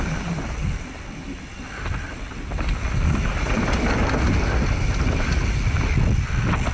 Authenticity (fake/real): real